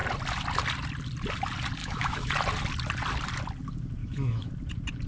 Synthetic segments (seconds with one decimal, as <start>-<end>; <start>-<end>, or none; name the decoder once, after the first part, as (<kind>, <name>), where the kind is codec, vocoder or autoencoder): 1.8-2.3 (autoencoder, DAC-VAE); 4.0-4.5